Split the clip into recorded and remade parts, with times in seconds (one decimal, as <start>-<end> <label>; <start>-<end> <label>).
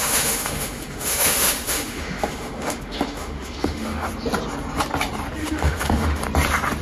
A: 0.0-4.1 remade; 4.1-5.4 recorded; 5.4-6.2 remade; 6.2-6.8 recorded